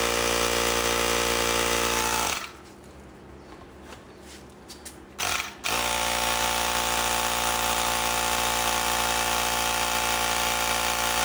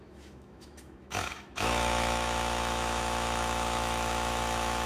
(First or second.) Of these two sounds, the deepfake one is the second